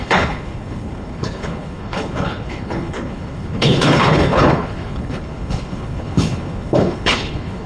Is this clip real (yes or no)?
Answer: no